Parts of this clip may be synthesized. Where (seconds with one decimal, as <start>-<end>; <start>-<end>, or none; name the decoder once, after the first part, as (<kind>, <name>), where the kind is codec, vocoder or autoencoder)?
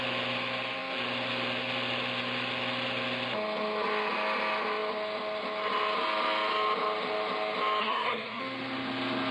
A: 7.8-8.4 (codec, SNAC)